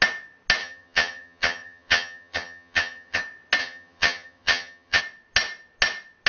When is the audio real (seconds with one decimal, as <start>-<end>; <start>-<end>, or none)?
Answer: 0.0-0.6; 3.2-3.6; 5.0-6.3